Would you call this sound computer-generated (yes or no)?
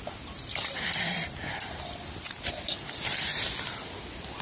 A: no